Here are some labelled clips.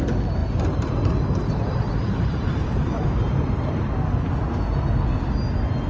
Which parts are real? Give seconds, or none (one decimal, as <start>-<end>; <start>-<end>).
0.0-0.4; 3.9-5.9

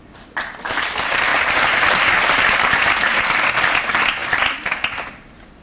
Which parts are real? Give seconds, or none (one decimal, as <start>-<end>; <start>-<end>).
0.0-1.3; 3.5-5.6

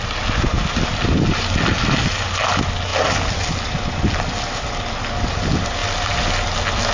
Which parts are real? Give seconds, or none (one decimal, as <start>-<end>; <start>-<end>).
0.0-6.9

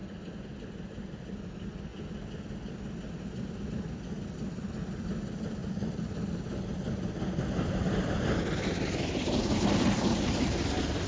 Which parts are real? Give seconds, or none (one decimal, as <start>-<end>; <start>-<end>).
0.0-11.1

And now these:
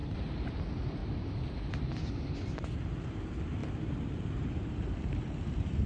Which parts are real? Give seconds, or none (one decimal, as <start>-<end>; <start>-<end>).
1.0-2.9

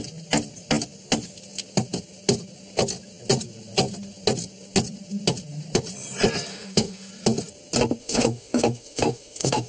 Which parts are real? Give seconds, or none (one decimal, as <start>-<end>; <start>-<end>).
0.0-6.5; 7.1-8.0